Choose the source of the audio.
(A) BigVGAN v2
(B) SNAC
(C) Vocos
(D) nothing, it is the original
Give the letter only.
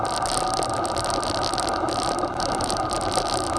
D